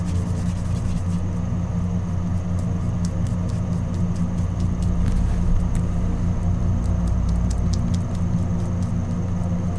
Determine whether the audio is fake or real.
real